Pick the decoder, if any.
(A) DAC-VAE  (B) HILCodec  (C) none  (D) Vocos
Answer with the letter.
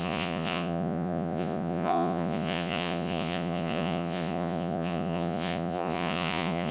D